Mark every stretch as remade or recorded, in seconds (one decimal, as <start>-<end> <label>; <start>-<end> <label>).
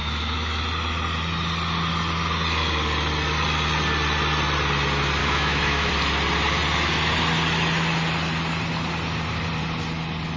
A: 0.0-0.6 remade; 0.6-5.2 recorded; 5.2-5.9 remade; 5.9-10.4 recorded